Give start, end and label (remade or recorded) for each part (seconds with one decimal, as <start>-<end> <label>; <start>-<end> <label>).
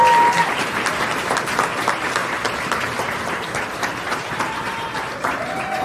0.0-2.2 recorded; 2.2-5.8 remade